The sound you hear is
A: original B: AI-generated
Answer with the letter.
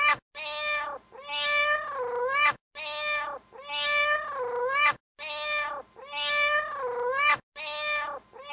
A